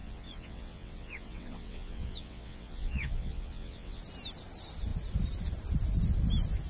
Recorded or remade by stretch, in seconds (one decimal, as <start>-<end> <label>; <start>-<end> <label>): 0.0-4.0 remade; 4.0-6.7 recorded